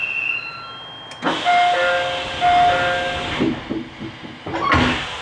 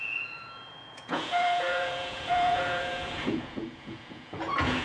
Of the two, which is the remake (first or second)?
second